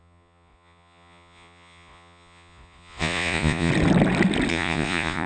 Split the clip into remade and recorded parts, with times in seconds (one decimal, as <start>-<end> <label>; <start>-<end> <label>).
0.0-3.7 remade; 3.7-4.5 recorded; 4.5-5.3 remade